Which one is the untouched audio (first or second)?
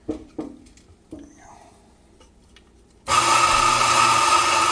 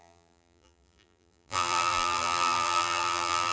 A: first